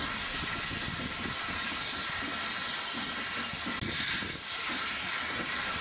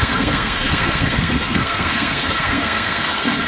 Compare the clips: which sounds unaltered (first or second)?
first